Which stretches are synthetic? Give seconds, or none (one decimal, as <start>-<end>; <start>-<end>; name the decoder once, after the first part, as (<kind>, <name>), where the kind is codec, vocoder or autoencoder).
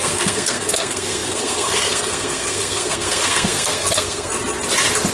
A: 0.0-4.3 (codec, SNAC)